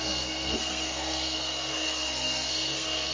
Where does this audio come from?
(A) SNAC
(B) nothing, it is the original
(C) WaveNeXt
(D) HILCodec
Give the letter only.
A